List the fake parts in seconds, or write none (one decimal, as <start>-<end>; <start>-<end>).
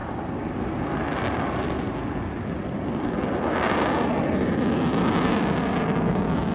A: none